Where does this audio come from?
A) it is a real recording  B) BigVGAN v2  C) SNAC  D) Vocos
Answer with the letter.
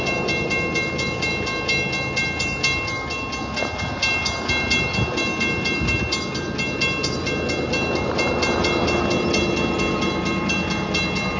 A